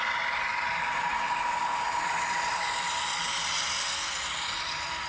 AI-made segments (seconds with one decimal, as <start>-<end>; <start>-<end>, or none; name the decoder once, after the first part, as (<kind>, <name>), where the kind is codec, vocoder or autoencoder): none